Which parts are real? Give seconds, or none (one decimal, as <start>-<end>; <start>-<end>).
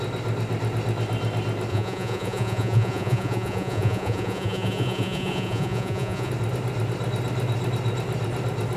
0.0-1.7; 6.3-8.8